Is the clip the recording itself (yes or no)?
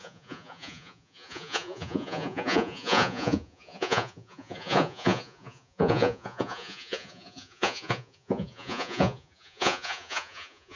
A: no